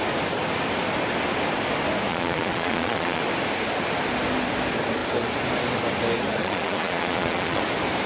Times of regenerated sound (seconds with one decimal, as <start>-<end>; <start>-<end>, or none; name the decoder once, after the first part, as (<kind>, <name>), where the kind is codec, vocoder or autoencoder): 2.1-3.2 (vocoder, Vocos); 6.4-7.6